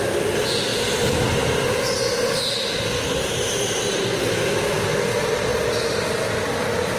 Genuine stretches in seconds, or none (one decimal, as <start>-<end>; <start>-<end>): 0.0-7.0